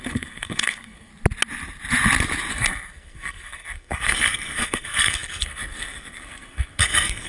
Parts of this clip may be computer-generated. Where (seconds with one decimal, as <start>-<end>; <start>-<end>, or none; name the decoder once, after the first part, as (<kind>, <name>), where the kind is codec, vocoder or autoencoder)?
0.0-1.1 (codec, SNAC); 2.5-7.3